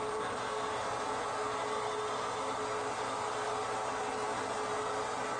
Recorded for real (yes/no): yes